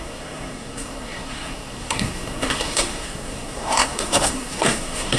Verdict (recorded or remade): remade